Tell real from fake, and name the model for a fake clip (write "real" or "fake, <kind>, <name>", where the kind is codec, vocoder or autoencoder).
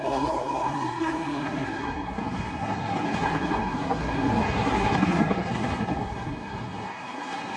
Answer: fake, codec, SNAC